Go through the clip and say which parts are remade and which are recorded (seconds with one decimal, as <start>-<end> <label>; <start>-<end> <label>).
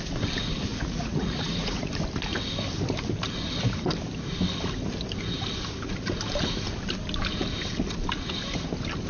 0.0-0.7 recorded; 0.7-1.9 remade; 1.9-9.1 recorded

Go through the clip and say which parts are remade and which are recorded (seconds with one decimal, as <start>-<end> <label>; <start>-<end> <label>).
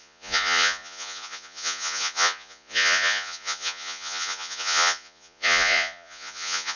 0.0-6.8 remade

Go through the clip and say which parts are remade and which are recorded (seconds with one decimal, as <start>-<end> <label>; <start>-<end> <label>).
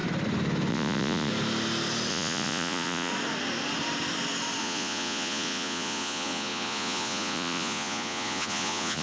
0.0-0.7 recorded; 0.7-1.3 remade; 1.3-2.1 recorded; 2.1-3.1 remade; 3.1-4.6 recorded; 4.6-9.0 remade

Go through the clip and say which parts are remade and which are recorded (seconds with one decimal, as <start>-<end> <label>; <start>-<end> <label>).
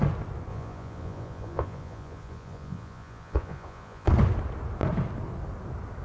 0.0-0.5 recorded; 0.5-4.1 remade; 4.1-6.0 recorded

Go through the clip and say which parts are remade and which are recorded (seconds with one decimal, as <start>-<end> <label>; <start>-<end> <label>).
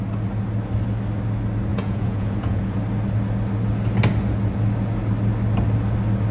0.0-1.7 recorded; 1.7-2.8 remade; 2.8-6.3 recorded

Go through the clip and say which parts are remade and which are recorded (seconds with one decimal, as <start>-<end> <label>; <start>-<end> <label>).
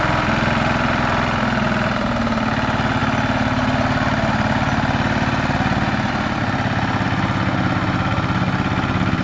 0.0-9.2 recorded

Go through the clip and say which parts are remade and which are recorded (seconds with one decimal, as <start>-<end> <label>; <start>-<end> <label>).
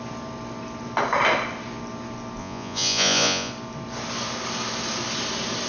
0.0-2.4 recorded; 2.4-3.5 remade; 3.5-5.7 recorded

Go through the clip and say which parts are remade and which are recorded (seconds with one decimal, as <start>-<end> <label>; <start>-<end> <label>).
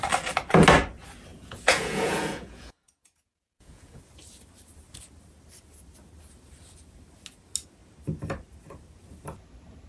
0.0-1.3 recorded; 1.3-4.0 remade; 4.0-9.9 recorded